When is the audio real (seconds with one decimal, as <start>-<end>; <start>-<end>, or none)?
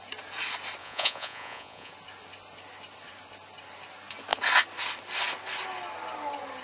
0.0-0.8; 1.9-6.6